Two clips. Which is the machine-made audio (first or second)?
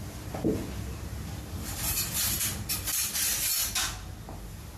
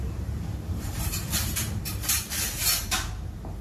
second